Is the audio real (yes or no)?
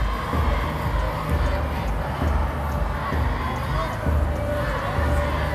yes